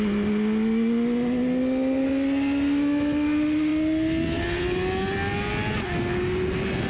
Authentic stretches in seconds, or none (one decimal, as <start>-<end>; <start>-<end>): 0.0-6.9